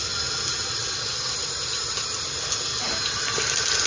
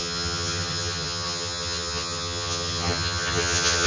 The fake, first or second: second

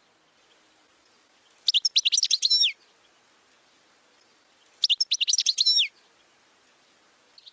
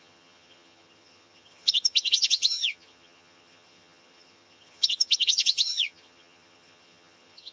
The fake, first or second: second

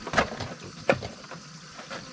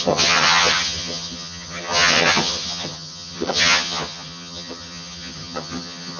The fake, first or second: second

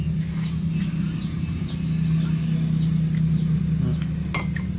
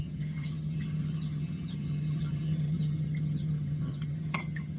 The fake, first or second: second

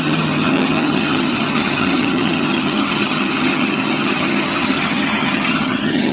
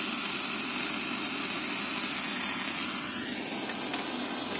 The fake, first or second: first